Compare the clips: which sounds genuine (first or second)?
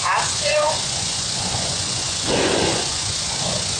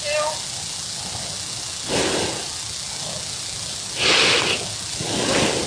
second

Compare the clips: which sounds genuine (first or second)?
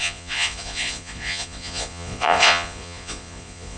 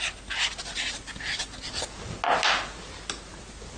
second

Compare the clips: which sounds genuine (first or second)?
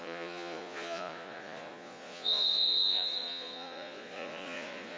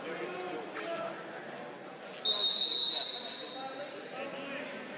second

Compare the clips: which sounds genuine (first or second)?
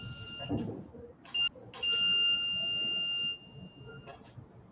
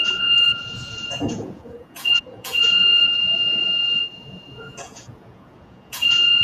first